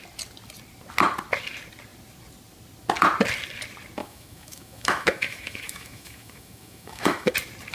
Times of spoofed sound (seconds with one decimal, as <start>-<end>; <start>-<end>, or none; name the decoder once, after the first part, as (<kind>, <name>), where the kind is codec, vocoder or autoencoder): 4.0-7.3 (autoencoder, DAC-VAE)